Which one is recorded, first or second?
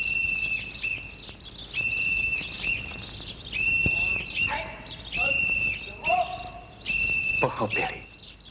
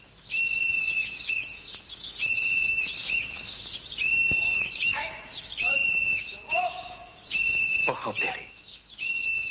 first